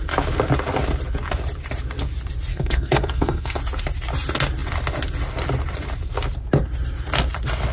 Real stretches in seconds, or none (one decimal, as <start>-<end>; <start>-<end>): 0.0-2.5; 3.6-7.7